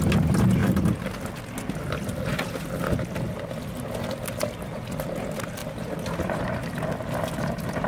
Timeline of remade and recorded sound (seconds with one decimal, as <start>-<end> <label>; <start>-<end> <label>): 0.0-0.6 recorded; 0.6-1.3 remade; 1.3-5.6 recorded; 5.6-6.4 remade; 6.4-7.9 recorded